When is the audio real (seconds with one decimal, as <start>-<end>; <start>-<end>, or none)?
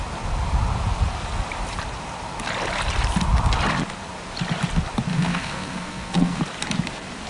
0.0-5.1; 6.4-7.3